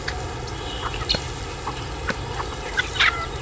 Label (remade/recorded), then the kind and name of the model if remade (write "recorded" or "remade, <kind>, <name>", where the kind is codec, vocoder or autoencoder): recorded